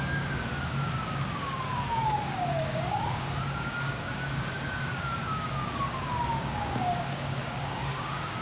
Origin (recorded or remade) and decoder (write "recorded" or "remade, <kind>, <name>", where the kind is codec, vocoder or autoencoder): remade, codec, DAC